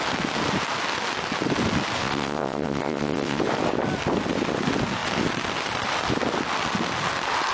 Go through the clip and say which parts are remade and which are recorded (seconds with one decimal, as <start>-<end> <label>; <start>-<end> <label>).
0.0-2.0 recorded; 2.0-3.4 remade; 3.4-7.5 recorded